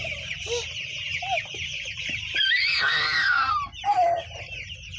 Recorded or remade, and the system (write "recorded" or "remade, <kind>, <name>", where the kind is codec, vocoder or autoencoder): recorded